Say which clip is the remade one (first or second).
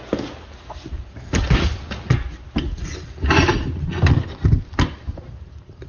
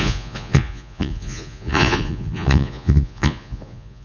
second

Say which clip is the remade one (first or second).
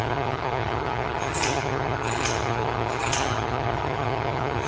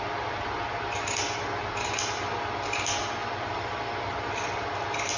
first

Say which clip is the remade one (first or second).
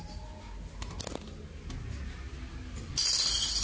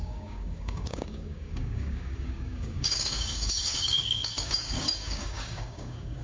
second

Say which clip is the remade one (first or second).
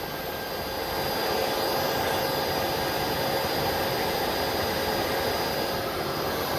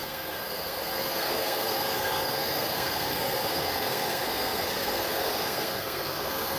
second